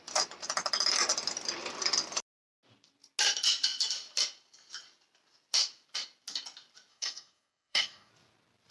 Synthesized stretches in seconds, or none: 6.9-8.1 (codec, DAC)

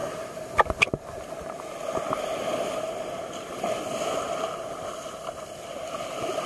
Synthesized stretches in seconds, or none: none

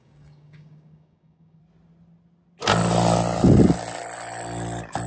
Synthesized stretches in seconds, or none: 0.0-1.6 (codec, DAC)